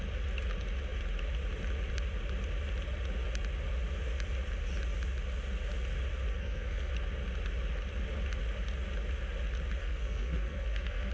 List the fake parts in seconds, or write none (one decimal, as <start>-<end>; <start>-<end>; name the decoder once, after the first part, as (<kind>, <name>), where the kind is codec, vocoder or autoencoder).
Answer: 6.3-6.9 (codec, SNAC); 9.8-11.1